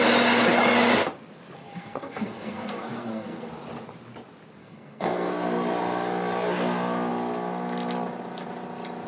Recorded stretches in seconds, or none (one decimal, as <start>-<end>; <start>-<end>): 0.0-1.6; 3.5-4.6; 5.3-9.1